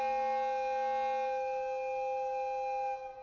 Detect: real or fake real